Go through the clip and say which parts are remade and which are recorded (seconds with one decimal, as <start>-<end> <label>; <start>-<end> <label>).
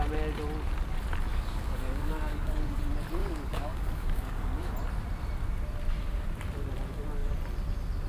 0.0-1.3 recorded; 1.3-2.8 remade; 2.8-3.2 recorded; 3.2-4.7 remade; 4.7-8.1 recorded